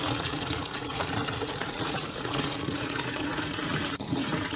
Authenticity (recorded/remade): remade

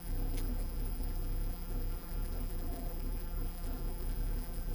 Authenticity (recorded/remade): remade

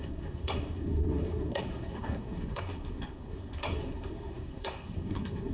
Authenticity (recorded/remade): remade